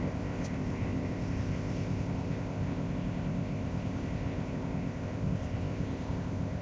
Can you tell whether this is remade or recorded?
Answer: remade